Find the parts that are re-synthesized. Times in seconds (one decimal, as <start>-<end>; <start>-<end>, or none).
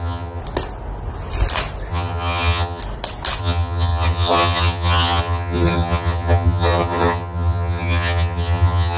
0.0-0.4; 1.9-2.8; 3.4-9.0